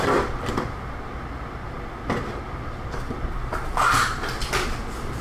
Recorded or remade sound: recorded